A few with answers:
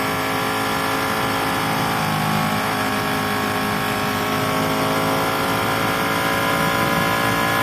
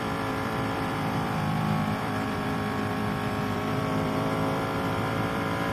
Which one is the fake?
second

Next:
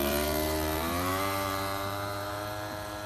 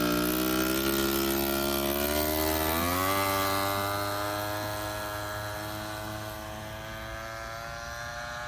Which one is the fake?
first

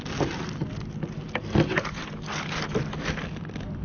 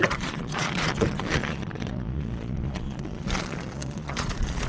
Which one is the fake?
second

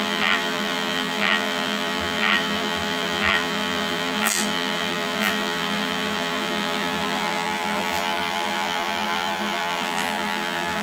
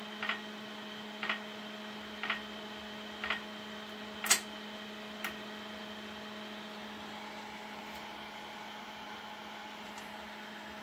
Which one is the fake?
first